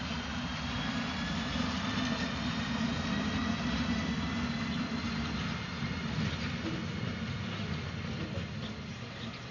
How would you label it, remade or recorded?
recorded